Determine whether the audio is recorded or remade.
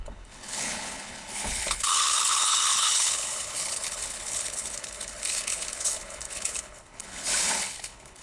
remade